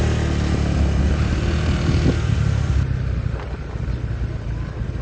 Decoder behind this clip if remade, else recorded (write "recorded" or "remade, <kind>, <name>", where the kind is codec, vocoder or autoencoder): recorded